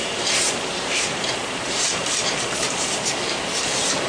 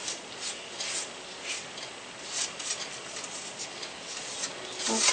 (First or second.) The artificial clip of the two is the first